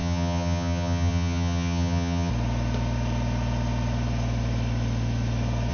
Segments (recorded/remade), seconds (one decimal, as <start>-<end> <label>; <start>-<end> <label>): 0.0-2.3 remade; 2.3-5.7 recorded